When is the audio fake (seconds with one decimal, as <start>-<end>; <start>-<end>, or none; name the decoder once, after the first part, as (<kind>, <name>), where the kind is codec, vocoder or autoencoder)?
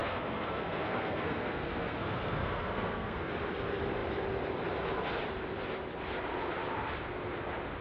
0.0-3.3 (codec, SNAC)